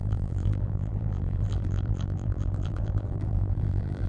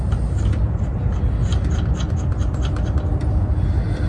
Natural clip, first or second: second